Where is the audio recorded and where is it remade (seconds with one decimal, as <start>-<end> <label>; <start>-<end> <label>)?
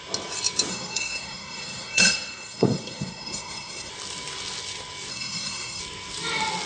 0.0-0.7 recorded; 0.7-3.9 remade; 3.9-5.1 recorded; 5.1-5.8 remade; 5.8-6.7 recorded